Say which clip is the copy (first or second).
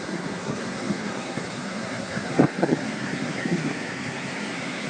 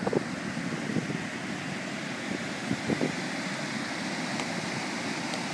first